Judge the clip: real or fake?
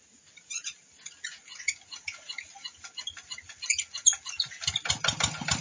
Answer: real